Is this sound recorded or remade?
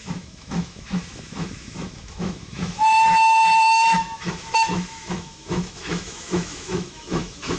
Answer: remade